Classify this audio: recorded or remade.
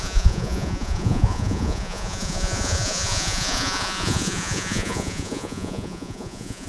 remade